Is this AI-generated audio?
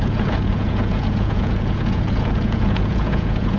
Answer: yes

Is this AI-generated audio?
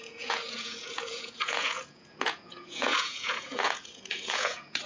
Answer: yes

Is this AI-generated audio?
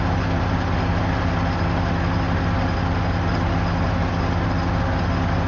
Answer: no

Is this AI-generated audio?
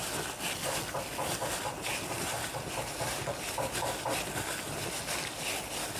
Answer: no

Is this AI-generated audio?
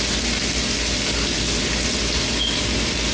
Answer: no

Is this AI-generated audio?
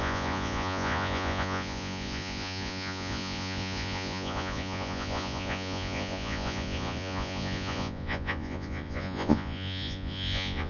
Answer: yes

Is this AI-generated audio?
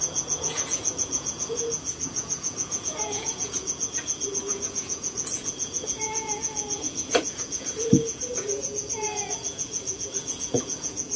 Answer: yes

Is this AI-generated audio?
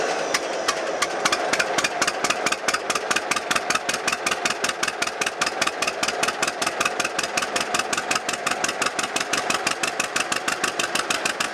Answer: no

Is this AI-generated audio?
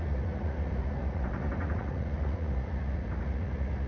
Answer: yes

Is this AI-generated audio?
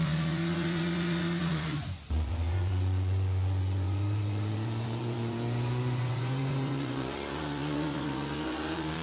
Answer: yes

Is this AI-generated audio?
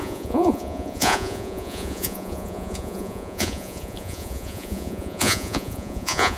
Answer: yes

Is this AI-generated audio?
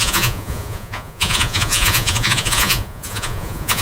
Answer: yes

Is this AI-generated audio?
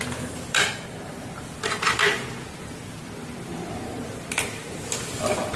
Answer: no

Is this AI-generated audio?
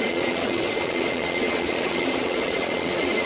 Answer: yes